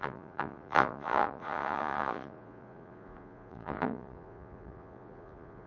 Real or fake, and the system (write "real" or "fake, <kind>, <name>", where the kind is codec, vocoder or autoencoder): fake, vocoder, Vocos